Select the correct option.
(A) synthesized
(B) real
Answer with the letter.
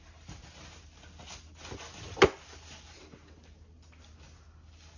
B